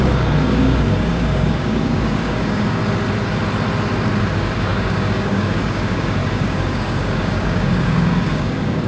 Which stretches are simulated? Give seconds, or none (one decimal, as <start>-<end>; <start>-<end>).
0.0-2.8; 4.2-8.9

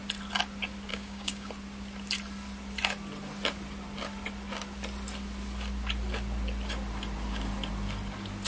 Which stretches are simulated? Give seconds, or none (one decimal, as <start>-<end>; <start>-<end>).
0.9-1.5

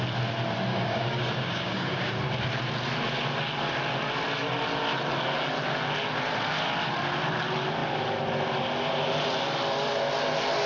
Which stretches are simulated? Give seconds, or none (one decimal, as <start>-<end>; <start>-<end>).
0.7-2.1

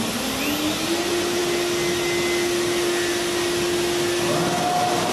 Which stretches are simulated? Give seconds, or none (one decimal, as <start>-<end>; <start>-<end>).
none

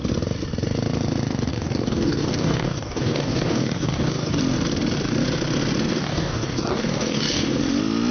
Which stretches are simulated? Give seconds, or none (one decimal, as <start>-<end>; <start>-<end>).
1.5-4.4; 5.9-7.6

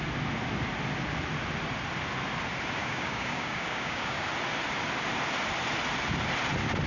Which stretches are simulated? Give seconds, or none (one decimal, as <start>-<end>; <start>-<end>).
2.8-4.3

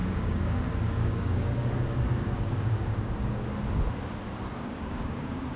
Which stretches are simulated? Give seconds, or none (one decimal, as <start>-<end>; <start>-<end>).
0.0-3.5; 4.7-5.6

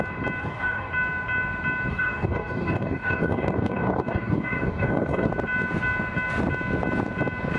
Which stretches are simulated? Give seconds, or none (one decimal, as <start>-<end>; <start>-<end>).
0.4-0.9; 1.9-5.3